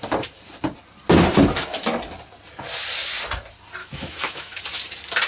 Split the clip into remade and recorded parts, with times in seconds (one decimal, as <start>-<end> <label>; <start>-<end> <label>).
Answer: 0.0-3.8 recorded; 3.8-4.6 remade; 4.6-5.3 recorded